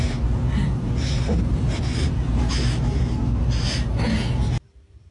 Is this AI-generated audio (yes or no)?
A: no